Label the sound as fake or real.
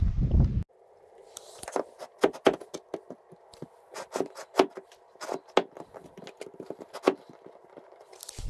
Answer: real